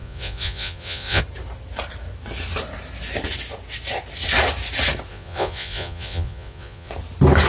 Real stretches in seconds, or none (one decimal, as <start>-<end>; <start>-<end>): 1.2-5.1; 6.9-7.5